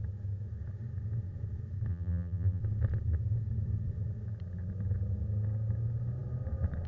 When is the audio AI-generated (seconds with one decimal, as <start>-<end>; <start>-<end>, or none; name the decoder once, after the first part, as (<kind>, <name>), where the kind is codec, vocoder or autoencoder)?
1.9-2.6 (vocoder, BigVGAN v2)

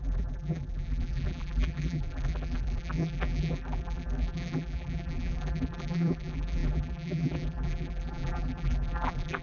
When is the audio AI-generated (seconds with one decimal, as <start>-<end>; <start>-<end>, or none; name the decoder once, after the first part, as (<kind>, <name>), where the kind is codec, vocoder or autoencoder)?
0.0-9.4 (vocoder, BigVGAN v2)

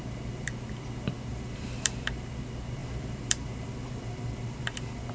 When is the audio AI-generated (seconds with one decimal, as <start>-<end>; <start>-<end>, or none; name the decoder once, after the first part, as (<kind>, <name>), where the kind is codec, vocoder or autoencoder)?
1.3-2.1 (vocoder, BigVGAN v2); 2.8-5.1

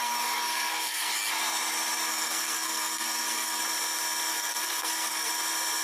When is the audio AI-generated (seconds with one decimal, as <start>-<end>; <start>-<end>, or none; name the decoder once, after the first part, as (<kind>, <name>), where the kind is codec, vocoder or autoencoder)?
0.0-1.1 (codec, SNAC); 2.1-3.6; 4.3-5.3

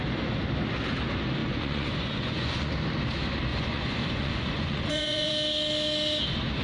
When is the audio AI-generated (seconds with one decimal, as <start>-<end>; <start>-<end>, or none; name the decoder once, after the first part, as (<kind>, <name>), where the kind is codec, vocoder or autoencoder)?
1.4-2.7 (vocoder, Vocos); 3.5-5.3

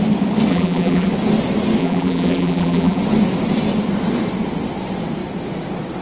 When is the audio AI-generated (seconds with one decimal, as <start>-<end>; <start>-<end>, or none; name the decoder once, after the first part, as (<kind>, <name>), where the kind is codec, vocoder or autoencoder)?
0.5-1.1 (vocoder, BigVGAN v2); 1.8-3.0

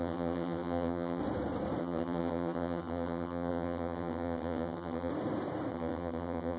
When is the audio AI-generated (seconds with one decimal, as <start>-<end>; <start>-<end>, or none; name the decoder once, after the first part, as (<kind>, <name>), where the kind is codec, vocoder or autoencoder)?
0.0-1.2 (vocoder, HiFi-GAN); 1.8-5.1; 5.7-6.6